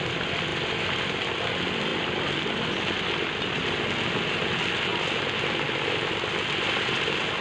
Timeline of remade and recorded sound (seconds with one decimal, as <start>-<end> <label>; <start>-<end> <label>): 0.0-7.4 recorded